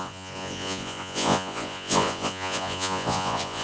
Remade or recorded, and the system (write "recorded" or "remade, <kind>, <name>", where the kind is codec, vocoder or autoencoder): remade, vocoder, Vocos